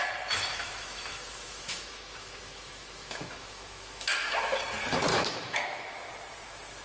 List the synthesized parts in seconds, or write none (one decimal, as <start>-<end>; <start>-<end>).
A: 0.5-4.6; 5.1-6.1